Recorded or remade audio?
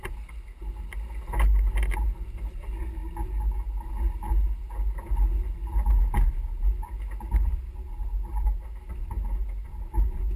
recorded